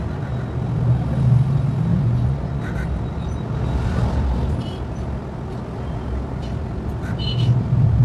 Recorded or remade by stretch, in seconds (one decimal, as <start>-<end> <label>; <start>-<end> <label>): 0.0-1.9 recorded; 1.9-2.6 remade; 2.6-8.0 recorded